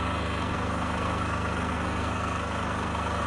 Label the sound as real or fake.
fake